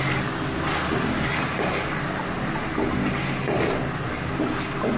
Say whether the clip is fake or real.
real